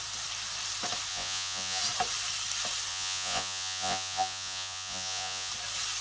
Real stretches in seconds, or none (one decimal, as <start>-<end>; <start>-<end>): 0.0-1.1; 1.8-2.9; 5.5-6.0